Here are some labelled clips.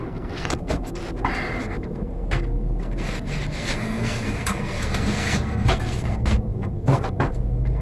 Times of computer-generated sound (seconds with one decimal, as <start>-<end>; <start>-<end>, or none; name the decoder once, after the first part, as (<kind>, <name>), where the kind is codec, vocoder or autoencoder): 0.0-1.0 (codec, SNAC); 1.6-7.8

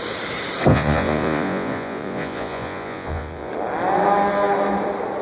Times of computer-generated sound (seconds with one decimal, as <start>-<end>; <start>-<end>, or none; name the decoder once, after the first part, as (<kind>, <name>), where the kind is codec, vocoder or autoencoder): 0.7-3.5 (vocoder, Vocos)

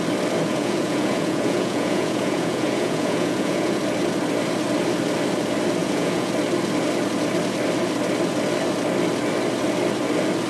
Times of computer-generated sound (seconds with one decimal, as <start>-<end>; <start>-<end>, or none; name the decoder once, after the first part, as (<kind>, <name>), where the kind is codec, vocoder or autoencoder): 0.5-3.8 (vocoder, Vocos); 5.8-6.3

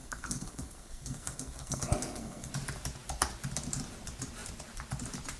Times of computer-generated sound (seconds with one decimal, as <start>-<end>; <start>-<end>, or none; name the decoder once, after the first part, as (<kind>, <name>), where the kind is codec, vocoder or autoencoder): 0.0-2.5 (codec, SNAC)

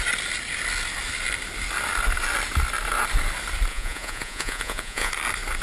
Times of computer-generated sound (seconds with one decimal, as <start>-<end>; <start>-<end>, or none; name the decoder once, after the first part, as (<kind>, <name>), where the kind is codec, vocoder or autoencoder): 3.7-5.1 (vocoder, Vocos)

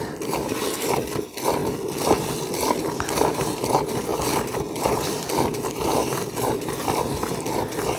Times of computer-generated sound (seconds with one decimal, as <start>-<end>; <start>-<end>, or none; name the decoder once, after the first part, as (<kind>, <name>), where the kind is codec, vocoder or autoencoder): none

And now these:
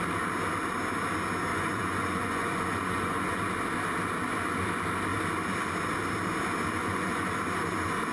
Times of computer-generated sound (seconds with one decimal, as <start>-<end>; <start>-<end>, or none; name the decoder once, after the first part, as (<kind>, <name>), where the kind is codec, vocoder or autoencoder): 1.5-3.4 (vocoder, Vocos); 6.8-7.3

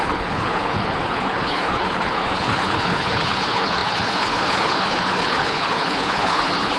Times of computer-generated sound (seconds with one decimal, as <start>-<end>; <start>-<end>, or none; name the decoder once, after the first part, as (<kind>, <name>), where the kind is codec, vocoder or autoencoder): 0.0-6.8 (codec, HILCodec)